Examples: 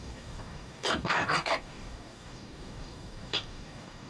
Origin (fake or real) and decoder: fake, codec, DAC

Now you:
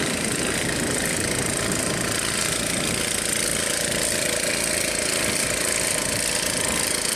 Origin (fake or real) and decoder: real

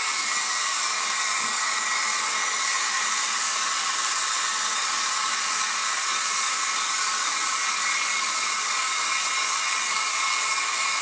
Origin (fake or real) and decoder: fake, codec, DAC